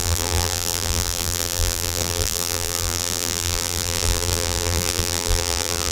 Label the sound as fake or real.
fake